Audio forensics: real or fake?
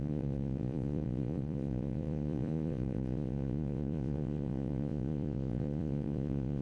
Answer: fake